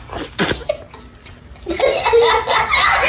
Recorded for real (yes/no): yes